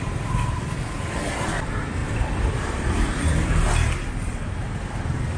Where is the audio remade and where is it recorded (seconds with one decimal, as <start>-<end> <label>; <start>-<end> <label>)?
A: 0.0-5.4 remade